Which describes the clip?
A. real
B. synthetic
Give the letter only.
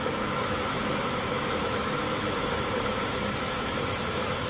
B